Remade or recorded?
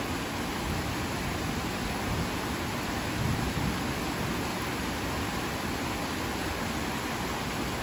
recorded